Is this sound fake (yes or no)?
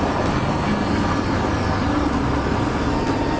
no